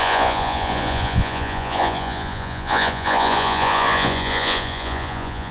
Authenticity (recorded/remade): remade